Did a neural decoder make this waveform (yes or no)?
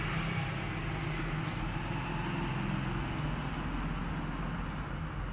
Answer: no